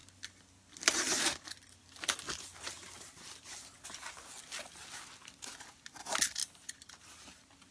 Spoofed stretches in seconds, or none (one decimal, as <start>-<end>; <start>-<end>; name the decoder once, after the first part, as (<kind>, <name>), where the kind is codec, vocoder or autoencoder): none